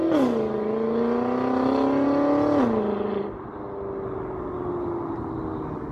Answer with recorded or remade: recorded